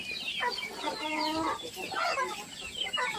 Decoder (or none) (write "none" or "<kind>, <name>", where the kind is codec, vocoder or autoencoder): none